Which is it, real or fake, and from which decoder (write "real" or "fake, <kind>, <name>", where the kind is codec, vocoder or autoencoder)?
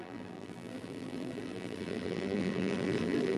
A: fake, vocoder, BigVGAN v2